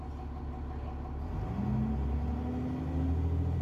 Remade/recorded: recorded